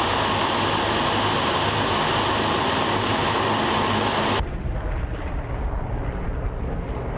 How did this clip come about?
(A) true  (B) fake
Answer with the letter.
A